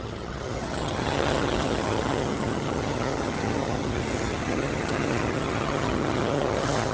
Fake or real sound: fake